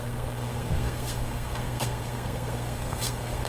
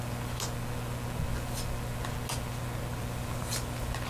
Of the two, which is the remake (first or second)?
first